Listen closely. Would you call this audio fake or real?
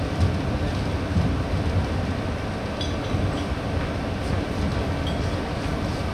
real